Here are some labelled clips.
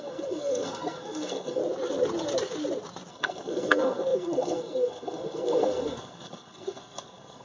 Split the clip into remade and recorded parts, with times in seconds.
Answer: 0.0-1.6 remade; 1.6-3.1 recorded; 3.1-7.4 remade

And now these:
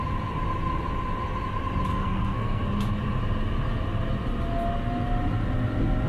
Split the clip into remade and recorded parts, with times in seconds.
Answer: 0.0-1.9 recorded; 1.9-2.6 remade; 2.6-6.1 recorded

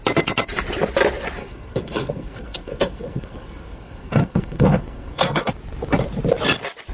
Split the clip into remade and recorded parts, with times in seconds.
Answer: 0.0-1.4 recorded; 1.4-5.5 remade; 5.5-6.9 recorded

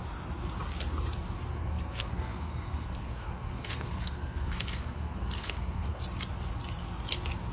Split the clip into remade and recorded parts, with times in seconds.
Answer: 0.0-1.5 recorded; 1.5-6.0 remade; 6.0-7.5 recorded

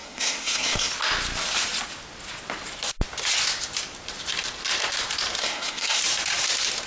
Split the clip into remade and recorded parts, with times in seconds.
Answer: 0.0-0.9 remade; 0.9-5.4 recorded; 5.4-6.0 remade; 6.0-6.9 recorded

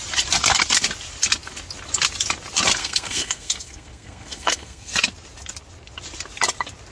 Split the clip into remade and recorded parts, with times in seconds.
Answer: 0.0-2.8 recorded; 2.8-4.9 remade; 4.9-6.9 recorded

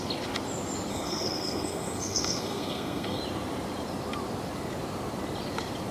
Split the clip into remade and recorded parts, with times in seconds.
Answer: 0.0-0.9 recorded; 0.9-3.2 remade; 3.2-5.9 recorded

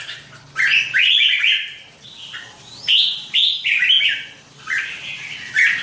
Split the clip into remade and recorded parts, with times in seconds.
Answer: 0.0-5.8 recorded